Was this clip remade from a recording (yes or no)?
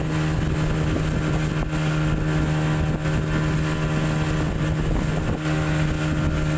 no